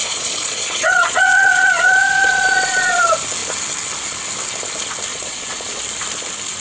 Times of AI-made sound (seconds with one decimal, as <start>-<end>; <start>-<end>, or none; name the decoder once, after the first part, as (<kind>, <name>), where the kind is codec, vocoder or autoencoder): 0.0-3.0 (vocoder, Vocos); 5.1-5.8

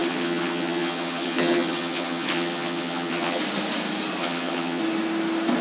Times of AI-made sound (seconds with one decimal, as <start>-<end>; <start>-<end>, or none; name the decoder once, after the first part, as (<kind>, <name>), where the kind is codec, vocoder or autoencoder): 0.0-3.4 (vocoder, HiFi-GAN); 4.2-4.8

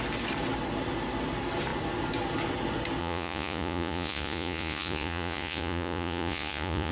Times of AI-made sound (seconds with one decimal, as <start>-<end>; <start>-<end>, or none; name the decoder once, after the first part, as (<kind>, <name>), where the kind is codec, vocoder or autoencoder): 3.0-6.9 (vocoder, Vocos)

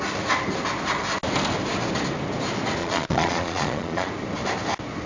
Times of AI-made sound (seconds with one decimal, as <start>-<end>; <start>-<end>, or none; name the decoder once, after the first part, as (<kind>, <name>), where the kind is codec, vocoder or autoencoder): 2.8-4.1 (vocoder, Vocos)

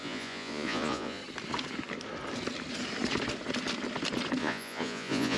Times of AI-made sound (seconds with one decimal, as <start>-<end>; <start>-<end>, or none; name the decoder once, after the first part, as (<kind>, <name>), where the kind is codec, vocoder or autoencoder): 0.0-1.2 (vocoder, Vocos); 4.4-5.4

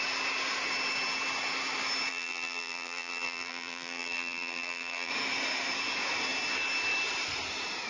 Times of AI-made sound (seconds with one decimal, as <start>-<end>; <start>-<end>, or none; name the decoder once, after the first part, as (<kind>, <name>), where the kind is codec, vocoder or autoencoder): 2.1-5.1 (vocoder, BigVGAN v2)

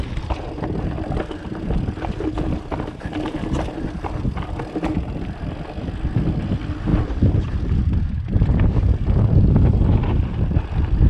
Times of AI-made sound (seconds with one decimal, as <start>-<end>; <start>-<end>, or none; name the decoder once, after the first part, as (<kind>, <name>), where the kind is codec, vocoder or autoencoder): 6.9-7.8 (vocoder, BigVGAN v2)

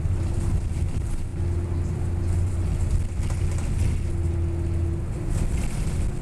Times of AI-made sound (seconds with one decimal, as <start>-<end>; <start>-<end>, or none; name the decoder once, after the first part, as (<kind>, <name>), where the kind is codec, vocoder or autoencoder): 0.0-1.3 (vocoder, BigVGAN v2); 2.2-2.7